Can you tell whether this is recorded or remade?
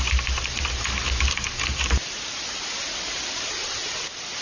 remade